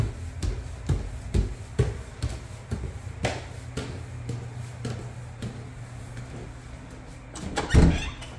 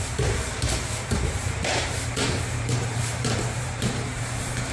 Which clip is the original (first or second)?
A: first